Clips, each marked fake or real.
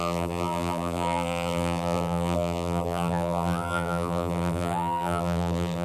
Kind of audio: fake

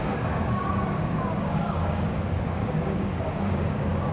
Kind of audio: fake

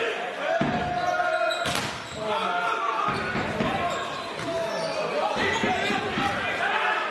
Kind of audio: real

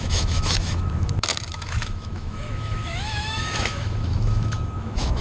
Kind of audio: fake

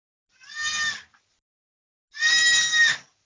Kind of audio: real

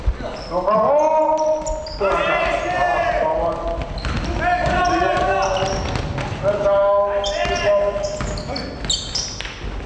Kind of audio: real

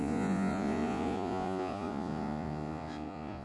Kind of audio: fake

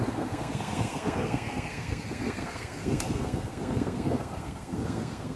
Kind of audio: fake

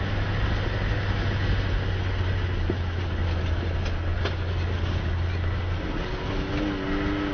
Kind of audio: real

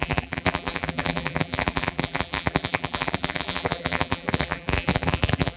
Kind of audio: fake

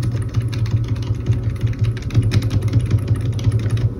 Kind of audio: real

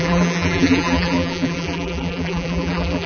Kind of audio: fake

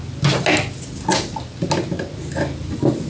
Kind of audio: real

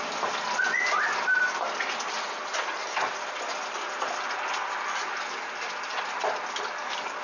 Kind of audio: real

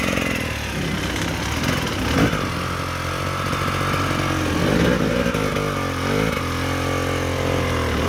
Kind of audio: real